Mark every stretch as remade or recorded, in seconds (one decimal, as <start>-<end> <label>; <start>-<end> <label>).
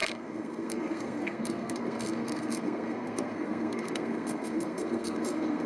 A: 0.0-5.7 remade